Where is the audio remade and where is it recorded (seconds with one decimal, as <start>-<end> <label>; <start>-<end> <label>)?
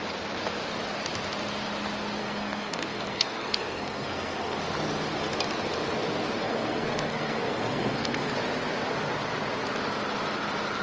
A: 0.0-2.2 recorded; 2.2-4.6 remade; 4.6-6.4 recorded; 6.4-8.3 remade; 8.3-10.8 recorded